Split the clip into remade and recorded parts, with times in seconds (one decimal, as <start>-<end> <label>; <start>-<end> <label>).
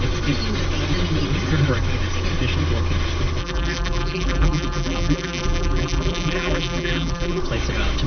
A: 0.0-3.4 recorded; 3.4-7.4 remade; 7.4-8.1 recorded